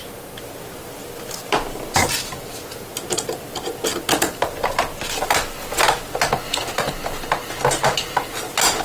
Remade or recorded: recorded